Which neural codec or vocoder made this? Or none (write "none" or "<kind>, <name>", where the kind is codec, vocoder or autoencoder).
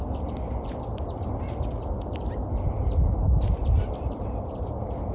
none